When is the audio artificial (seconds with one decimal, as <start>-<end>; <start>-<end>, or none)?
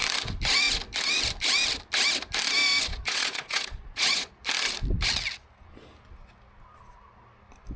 2.9-4.3